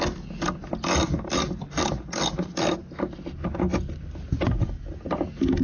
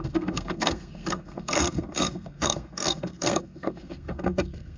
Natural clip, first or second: first